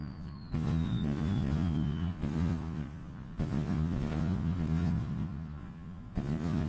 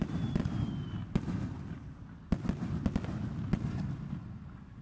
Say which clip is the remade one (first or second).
first